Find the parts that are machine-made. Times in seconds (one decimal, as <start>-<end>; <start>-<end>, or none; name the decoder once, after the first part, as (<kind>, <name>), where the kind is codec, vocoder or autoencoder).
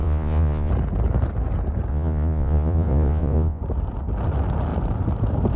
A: 0.0-0.7 (vocoder, Vocos); 1.9-3.6